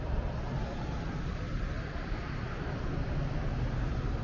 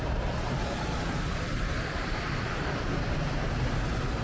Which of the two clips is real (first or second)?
first